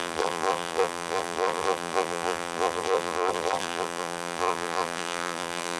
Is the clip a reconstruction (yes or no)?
yes